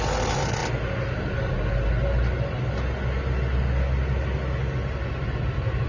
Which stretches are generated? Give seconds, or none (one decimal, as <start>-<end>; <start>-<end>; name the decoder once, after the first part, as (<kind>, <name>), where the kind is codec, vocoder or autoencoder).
none

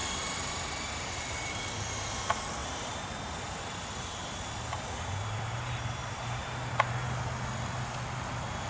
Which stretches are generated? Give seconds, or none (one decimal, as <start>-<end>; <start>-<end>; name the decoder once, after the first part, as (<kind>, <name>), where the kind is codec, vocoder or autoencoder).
0.0-1.6 (vocoder, BigVGAN v2); 2.6-6.9